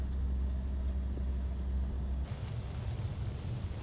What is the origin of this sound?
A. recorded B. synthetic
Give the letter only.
A